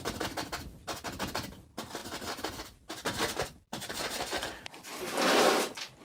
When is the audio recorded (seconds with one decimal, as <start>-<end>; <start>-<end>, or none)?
0.0-6.0